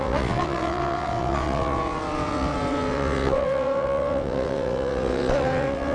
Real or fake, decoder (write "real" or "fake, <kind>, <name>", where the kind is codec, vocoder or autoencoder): fake, vocoder, WaveNeXt